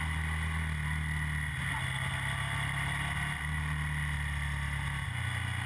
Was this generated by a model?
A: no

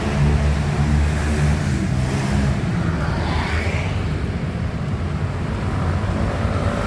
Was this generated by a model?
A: no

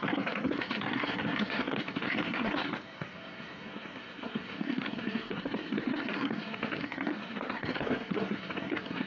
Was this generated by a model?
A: yes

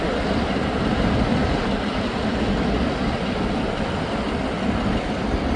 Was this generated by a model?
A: no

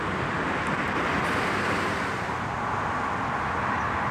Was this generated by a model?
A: no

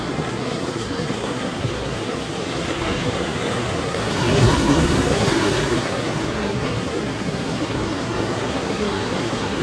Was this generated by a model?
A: yes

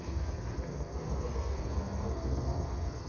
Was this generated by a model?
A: yes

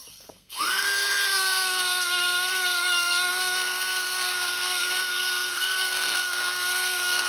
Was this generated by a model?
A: yes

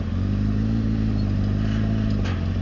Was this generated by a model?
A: no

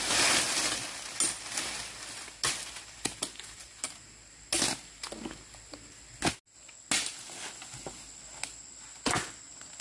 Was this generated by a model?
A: no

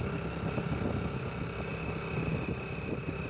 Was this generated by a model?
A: no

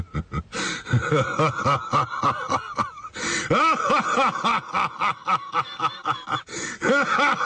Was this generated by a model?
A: no